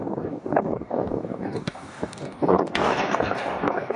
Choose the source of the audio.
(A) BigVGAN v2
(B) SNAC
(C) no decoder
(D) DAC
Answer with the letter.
D